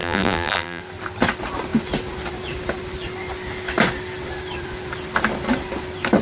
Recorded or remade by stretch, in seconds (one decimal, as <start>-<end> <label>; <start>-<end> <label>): 0.0-0.8 remade; 0.8-6.2 recorded